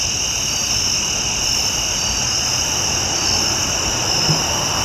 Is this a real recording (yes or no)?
yes